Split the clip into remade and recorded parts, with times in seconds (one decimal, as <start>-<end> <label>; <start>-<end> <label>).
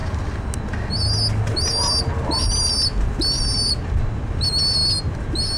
0.0-5.6 recorded